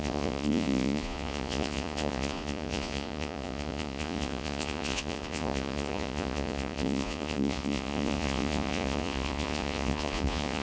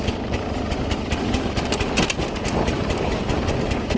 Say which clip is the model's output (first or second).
first